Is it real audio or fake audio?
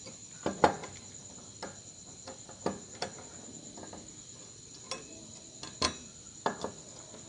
real